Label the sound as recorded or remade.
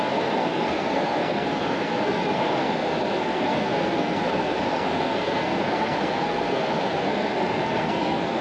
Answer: remade